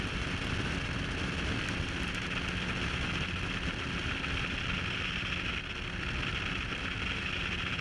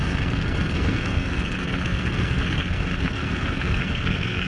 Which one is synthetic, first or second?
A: second